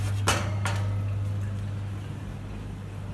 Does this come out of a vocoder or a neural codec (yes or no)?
no